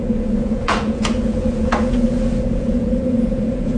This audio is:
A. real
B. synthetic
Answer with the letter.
B